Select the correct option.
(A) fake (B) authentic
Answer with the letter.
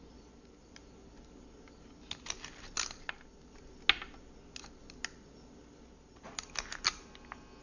B